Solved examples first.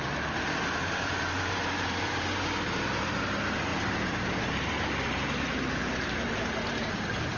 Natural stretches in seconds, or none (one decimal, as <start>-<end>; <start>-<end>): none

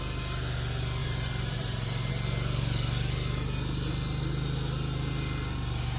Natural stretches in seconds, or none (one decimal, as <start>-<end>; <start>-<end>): 0.0-1.0; 2.1-6.0

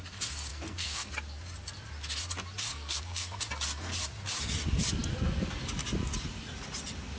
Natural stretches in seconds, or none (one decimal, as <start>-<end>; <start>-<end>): 0.0-0.5; 1.1-2.7; 3.4-7.2

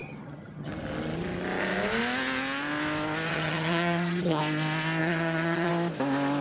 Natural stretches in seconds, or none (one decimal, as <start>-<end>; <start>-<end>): 0.7-3.3; 4.4-5.0; 5.7-6.4

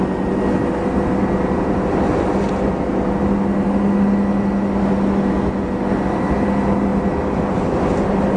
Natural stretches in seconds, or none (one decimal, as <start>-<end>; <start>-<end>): 0.0-8.4